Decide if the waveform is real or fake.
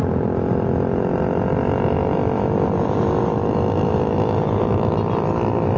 real